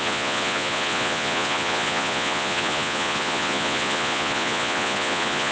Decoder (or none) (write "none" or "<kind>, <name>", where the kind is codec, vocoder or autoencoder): vocoder, Vocos